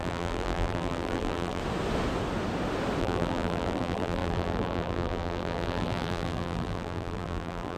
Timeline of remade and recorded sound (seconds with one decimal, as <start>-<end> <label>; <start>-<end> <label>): 0.0-1.6 remade; 1.6-3.0 recorded; 3.0-7.8 remade

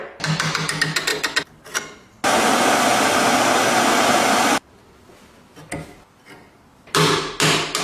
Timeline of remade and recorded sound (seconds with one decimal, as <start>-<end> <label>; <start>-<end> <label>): 0.0-1.1 recorded; 1.1-1.6 remade; 1.6-7.8 recorded

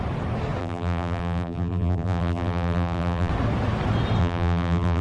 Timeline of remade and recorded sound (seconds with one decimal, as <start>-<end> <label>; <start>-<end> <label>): 0.0-0.6 recorded; 0.6-3.3 remade; 3.3-4.2 recorded; 4.2-5.0 remade

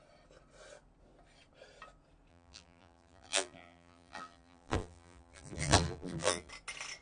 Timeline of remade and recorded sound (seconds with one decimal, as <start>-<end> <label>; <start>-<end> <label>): 0.0-2.3 recorded; 2.3-6.5 remade; 6.5-7.0 recorded

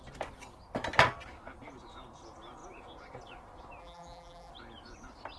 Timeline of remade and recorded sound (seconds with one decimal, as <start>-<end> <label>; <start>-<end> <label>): 0.0-3.8 recorded; 3.8-4.5 remade; 4.5-5.4 recorded